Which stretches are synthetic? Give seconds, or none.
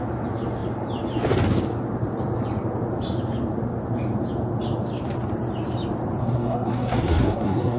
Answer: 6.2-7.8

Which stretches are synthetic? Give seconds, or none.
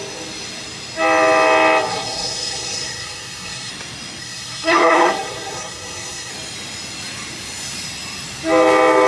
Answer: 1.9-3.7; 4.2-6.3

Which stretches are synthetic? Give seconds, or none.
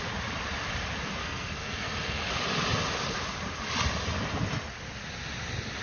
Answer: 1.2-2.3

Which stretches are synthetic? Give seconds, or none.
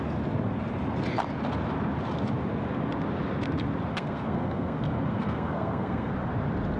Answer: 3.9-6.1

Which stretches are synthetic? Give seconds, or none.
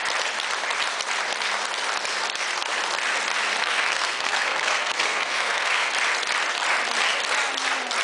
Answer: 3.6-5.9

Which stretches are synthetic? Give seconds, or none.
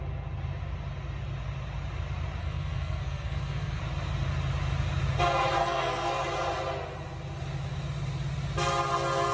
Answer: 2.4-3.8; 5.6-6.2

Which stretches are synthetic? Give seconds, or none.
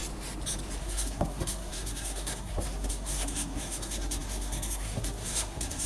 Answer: 0.8-5.9